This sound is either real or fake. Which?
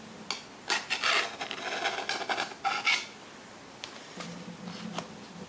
real